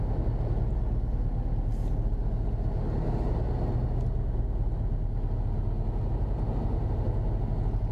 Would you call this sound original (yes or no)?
yes